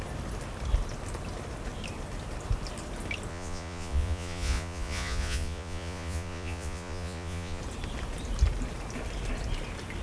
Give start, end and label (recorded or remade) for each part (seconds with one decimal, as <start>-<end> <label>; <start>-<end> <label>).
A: 0.0-3.3 recorded; 3.3-7.6 remade; 7.6-10.0 recorded

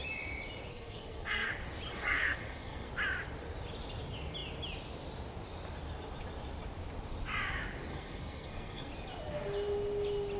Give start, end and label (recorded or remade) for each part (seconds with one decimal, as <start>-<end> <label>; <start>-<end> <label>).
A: 0.0-0.7 recorded; 0.7-1.5 remade; 1.5-1.9 recorded; 1.9-2.9 remade; 2.9-7.9 recorded; 7.9-8.9 remade; 8.9-10.4 recorded